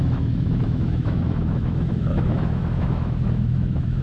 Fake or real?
fake